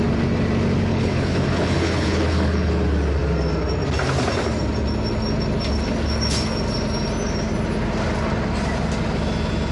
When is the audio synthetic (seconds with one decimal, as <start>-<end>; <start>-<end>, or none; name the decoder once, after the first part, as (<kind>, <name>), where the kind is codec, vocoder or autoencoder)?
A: 0.9-2.7 (codec, HILCodec)